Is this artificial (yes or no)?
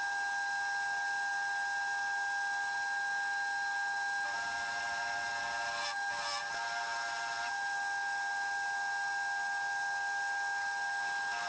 no